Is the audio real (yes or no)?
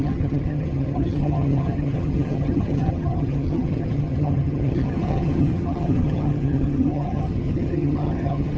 no